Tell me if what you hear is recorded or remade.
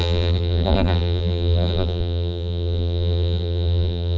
remade